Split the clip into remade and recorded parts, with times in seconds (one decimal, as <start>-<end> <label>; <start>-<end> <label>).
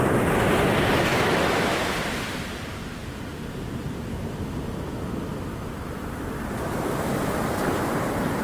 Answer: 0.0-1.1 recorded; 1.1-1.8 remade; 1.8-8.4 recorded